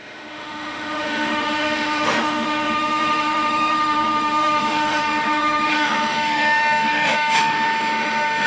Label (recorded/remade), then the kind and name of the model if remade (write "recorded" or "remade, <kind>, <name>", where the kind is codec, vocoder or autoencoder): remade, autoencoder, DAC-VAE